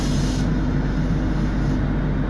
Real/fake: real